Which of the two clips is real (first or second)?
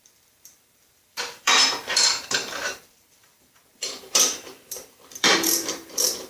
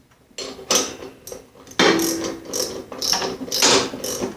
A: second